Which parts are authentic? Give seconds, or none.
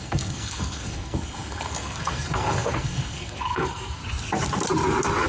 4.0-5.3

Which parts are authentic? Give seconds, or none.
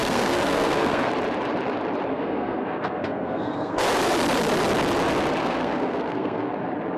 1.1-2.1; 3.8-5.4; 6.5-7.0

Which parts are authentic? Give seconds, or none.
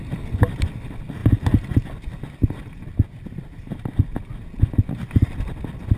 0.0-6.0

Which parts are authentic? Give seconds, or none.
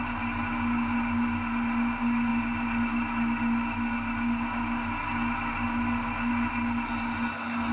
0.0-7.7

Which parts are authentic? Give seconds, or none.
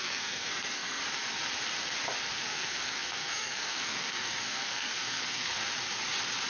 1.0-2.3; 5.6-6.5